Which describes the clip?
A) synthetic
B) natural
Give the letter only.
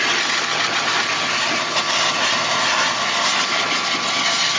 B